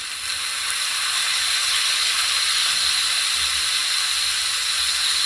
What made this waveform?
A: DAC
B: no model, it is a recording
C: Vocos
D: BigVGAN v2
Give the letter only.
B